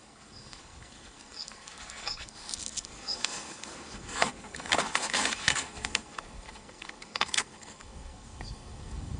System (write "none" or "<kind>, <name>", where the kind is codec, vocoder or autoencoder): codec, SNAC